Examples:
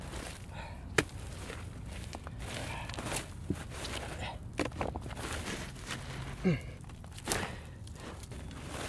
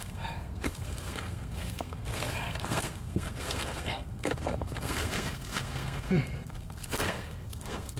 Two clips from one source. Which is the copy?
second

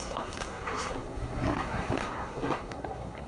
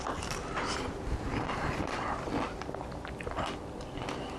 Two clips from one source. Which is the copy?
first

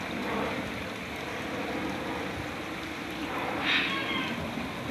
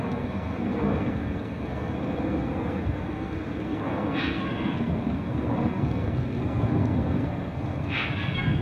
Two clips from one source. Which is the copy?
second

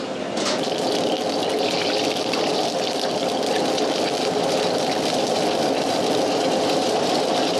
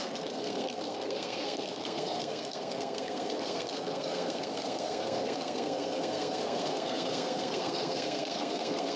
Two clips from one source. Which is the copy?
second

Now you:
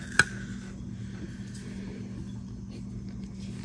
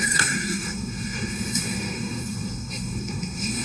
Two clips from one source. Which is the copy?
second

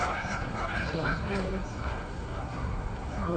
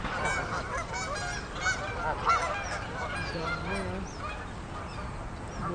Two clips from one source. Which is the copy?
first